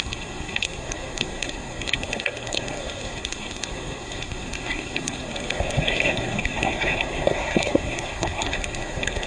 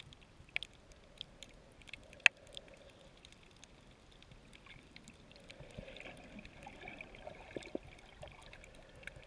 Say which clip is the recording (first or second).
second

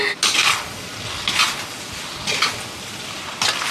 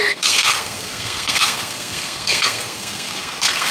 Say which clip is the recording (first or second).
first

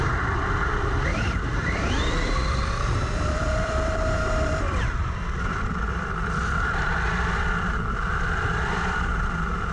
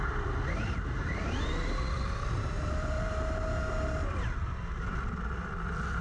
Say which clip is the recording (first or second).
second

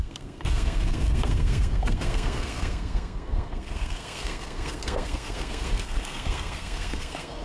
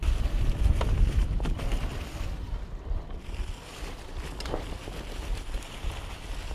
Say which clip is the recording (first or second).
second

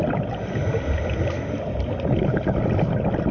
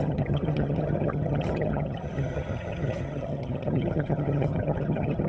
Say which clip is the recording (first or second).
first